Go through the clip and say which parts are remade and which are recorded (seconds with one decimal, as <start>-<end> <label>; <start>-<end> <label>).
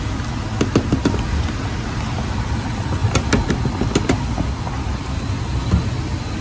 0.0-6.4 recorded